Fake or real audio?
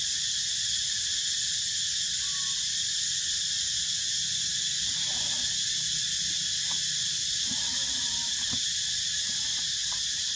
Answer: real